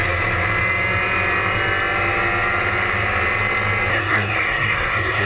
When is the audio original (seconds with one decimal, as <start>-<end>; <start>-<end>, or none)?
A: 0.0-3.9